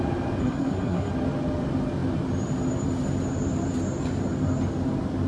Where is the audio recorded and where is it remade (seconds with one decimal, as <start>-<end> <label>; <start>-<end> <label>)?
0.0-0.4 recorded; 0.4-1.1 remade; 1.1-5.3 recorded